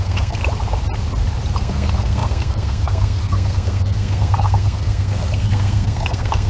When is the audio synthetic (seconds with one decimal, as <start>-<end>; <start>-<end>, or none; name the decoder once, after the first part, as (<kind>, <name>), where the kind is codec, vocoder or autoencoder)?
0.0-0.4 (codec, SNAC); 1.6-6.5